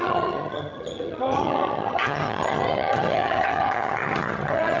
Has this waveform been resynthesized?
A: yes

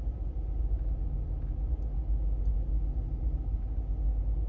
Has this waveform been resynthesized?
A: no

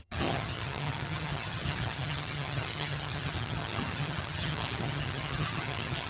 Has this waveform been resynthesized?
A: yes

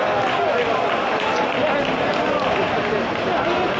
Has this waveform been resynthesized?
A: no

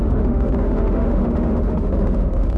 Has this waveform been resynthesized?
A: yes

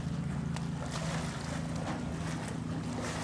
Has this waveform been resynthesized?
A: no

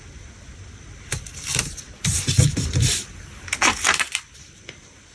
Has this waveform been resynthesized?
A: yes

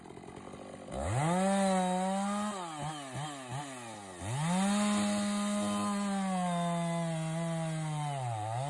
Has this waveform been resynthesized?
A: no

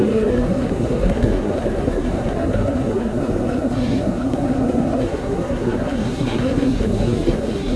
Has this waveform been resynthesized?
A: yes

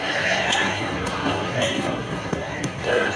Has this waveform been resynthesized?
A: yes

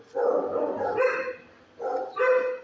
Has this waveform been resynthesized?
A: no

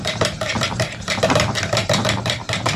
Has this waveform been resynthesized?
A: yes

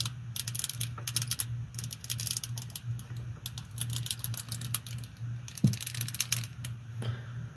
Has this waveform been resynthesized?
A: no